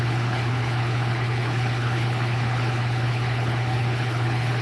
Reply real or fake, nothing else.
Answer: fake